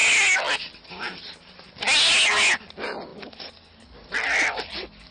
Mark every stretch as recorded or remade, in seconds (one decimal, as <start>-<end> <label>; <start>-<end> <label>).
0.0-5.1 recorded